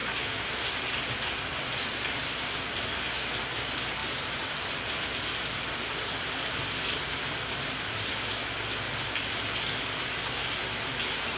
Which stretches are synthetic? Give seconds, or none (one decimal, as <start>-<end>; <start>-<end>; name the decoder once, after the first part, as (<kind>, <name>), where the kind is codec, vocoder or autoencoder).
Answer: 0.0-2.4 (vocoder, BigVGAN v2); 4.0-8.1